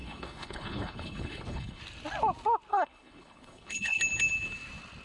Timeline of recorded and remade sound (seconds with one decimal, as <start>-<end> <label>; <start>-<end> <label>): 0.0-1.8 remade; 1.8-2.7 recorded; 2.7-4.0 remade; 4.0-5.0 recorded